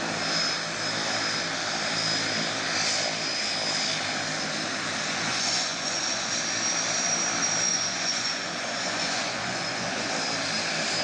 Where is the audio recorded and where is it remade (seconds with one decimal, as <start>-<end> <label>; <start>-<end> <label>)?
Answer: 0.0-5.1 recorded; 5.1-6.3 remade; 6.3-7.7 recorded; 7.7-10.1 remade; 10.1-11.0 recorded